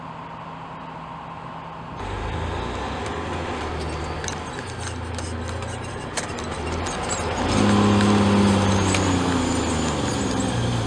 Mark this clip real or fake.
real